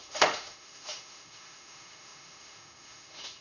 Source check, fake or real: fake